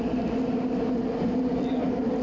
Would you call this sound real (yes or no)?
yes